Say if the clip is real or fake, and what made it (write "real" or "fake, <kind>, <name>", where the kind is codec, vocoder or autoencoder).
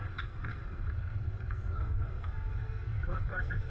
fake, codec, SNAC